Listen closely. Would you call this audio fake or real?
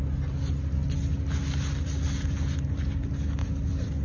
real